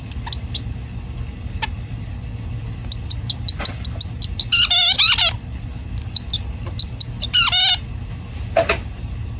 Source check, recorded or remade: recorded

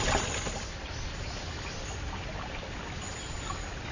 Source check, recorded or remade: recorded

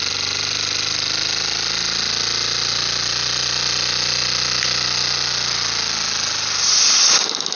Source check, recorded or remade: recorded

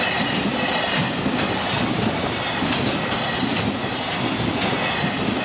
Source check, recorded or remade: recorded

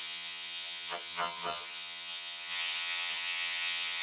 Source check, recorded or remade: remade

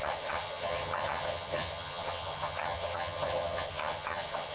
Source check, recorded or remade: remade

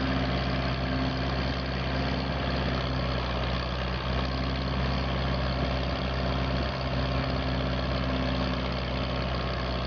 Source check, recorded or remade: recorded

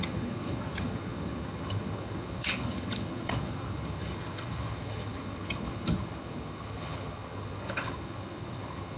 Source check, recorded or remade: remade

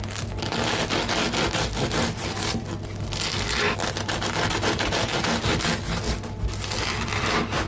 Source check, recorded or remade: recorded